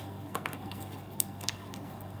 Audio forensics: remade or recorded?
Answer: remade